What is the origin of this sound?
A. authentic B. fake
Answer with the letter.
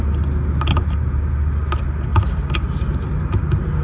A